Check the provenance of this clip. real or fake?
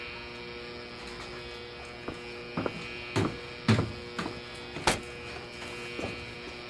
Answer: real